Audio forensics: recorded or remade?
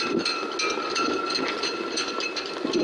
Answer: recorded